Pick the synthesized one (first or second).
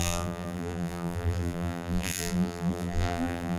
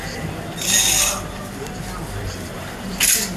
first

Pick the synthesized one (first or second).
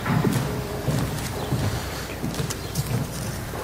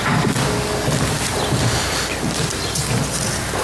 first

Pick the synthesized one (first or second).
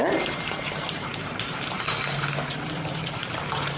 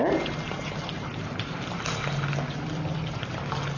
first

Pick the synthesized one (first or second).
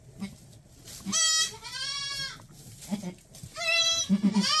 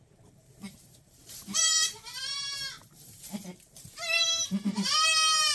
second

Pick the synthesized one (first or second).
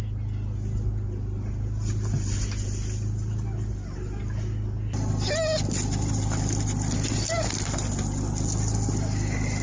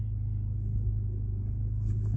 second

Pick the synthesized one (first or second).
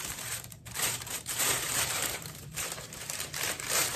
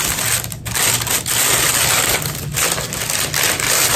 first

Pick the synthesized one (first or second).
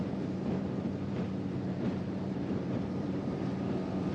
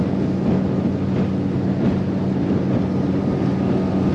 first